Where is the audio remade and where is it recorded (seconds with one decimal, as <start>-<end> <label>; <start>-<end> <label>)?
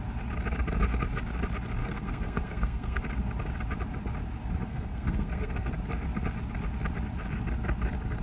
0.0-1.8 recorded; 1.8-3.0 remade; 3.0-4.7 recorded; 4.7-5.7 remade; 5.7-8.2 recorded